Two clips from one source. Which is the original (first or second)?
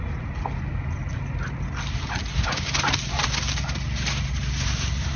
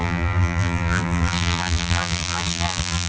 first